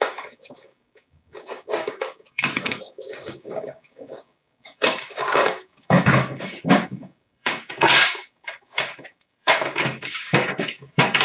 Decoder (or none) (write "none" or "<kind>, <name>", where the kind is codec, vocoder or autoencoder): codec, DAC